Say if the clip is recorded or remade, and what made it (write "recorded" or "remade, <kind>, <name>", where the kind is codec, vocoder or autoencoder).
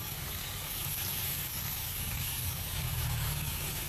remade, codec, DAC